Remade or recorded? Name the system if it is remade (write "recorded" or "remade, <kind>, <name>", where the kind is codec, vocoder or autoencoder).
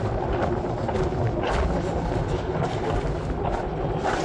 recorded